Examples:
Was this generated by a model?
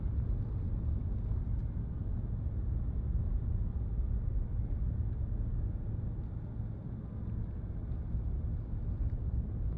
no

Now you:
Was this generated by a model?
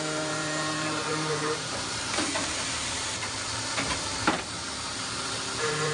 yes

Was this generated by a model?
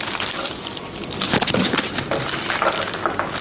yes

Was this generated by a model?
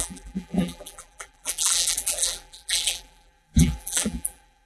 yes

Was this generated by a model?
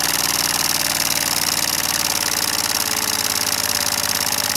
no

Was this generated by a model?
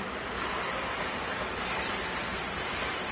yes